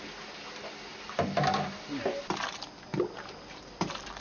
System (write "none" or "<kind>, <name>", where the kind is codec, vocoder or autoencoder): none